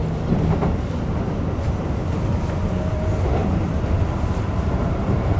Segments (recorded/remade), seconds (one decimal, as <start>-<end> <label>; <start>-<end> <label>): 0.0-2.9 recorded; 2.9-3.4 remade; 3.4-4.1 recorded; 4.1-5.4 remade